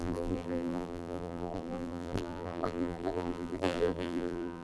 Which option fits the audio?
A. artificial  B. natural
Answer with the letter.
A